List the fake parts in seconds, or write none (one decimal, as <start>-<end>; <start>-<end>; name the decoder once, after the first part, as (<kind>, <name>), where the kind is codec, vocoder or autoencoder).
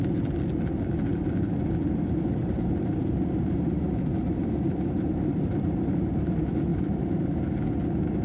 2.4-6.2 (vocoder, BigVGAN v2); 6.7-7.4